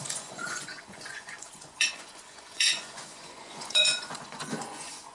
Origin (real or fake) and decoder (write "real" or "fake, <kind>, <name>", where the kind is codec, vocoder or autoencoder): fake, vocoder, Vocos